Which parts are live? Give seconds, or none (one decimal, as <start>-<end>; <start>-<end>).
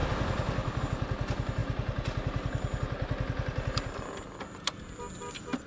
0.0-5.7